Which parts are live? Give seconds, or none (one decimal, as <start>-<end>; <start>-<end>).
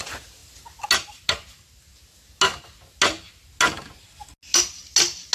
0.0-5.3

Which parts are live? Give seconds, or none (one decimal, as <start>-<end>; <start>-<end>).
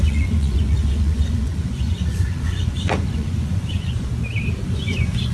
4.1-4.7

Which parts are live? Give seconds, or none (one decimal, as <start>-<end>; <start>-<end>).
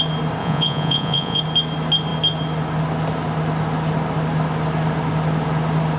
0.0-0.4; 1.4-6.0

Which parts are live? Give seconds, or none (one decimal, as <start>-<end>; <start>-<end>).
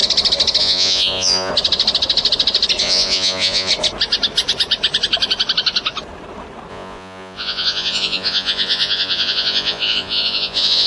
0.0-0.6; 1.5-2.8; 3.7-6.7